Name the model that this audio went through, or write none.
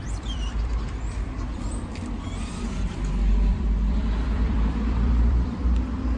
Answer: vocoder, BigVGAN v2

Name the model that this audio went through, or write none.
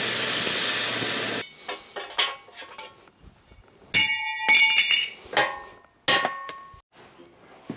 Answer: none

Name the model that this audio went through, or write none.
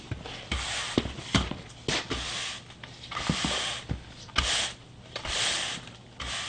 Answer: none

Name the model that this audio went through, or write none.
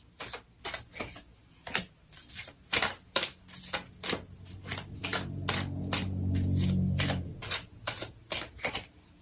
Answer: none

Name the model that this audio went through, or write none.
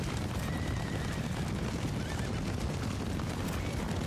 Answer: none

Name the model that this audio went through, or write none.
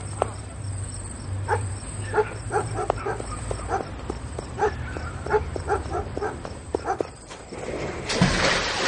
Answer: vocoder, BigVGAN v2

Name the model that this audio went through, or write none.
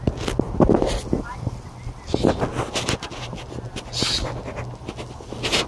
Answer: none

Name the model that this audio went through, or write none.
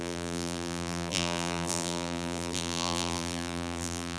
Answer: vocoder, BigVGAN v2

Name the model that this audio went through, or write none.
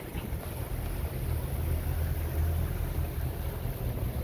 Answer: none